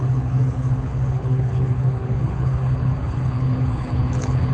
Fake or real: fake